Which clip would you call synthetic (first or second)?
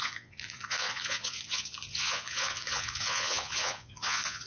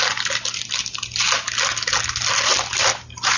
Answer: first